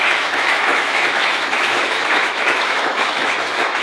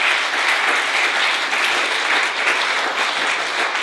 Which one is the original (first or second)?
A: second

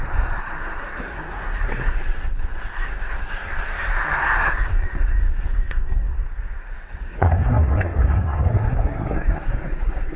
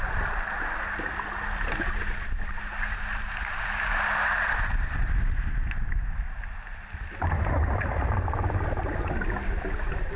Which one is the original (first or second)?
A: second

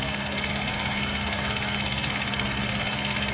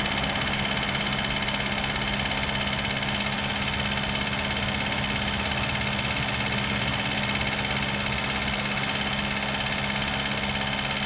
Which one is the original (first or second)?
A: second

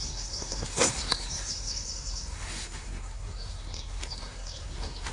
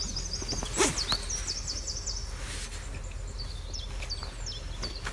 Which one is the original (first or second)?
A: second